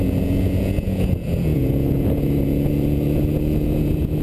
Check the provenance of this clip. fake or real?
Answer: fake